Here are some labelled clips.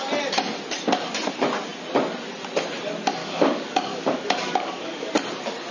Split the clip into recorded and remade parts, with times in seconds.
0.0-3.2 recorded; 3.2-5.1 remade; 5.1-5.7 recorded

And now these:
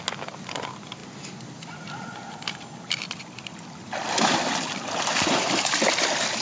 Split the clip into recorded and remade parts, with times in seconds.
0.0-6.4 recorded

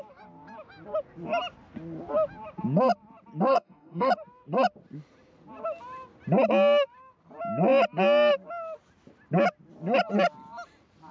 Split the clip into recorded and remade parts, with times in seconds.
0.0-3.5 recorded; 3.5-4.1 remade; 4.1-11.1 recorded

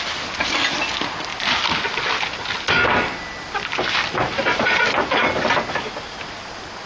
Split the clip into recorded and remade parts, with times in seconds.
0.0-6.9 recorded

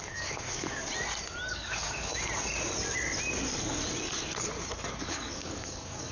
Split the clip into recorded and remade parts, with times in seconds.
0.0-0.8 remade; 0.8-1.5 recorded; 1.5-2.1 remade; 2.1-4.9 recorded; 4.9-6.1 remade

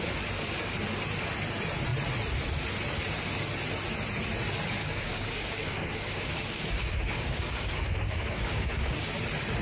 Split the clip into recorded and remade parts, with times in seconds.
0.0-4.8 recorded; 4.8-9.1 remade; 9.1-9.6 recorded

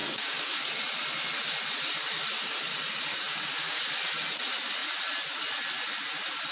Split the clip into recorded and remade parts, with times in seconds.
0.0-0.7 remade; 0.7-3.1 recorded; 3.1-3.8 remade; 3.8-6.5 recorded